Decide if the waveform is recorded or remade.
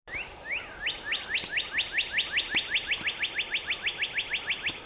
recorded